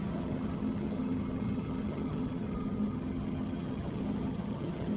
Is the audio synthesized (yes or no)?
yes